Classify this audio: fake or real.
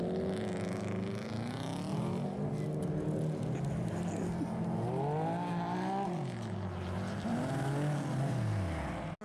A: real